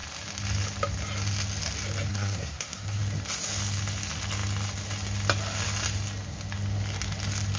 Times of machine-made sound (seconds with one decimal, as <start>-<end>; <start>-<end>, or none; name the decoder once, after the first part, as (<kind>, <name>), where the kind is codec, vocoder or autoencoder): 2.1-3.0 (codec, SNAC)